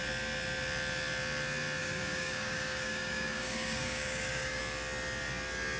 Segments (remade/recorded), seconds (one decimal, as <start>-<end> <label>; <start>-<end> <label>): 0.0-1.8 recorded; 1.8-4.6 remade; 4.6-5.8 recorded